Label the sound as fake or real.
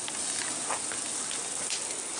real